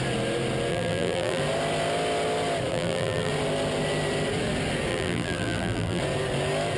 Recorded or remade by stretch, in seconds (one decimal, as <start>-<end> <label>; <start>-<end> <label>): 0.0-0.7 recorded; 0.7-1.4 remade; 1.4-2.7 recorded; 2.7-3.3 remade; 3.3-4.9 recorded; 4.9-6.0 remade; 6.0-6.8 recorded